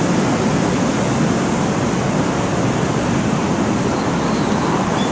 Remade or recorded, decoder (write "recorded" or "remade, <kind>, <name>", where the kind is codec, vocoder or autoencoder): recorded